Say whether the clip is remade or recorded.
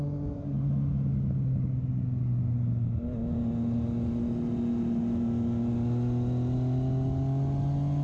recorded